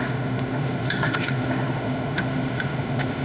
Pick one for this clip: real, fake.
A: fake